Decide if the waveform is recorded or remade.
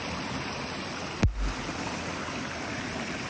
recorded